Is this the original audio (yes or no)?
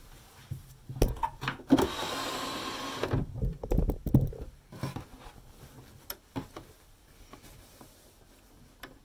yes